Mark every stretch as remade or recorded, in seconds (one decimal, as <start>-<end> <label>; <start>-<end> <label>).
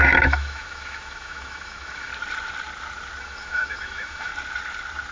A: 0.0-2.1 remade; 2.1-3.2 recorded; 3.2-4.3 remade; 4.3-5.1 recorded